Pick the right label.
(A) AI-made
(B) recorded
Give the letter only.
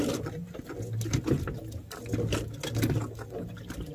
B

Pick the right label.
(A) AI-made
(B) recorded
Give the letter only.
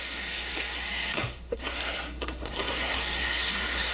A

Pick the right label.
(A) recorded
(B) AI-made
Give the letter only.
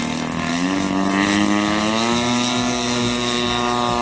A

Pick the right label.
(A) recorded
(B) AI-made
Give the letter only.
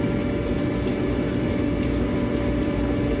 A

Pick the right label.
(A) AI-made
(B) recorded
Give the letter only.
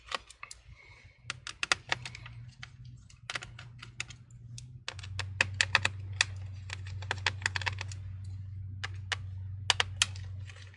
B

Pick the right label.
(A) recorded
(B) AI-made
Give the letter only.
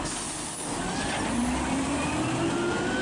A